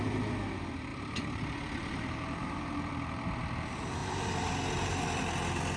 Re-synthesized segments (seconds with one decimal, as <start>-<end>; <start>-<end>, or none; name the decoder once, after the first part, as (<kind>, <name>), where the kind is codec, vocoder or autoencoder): 0.9-2.9 (vocoder, BigVGAN v2); 4.0-4.5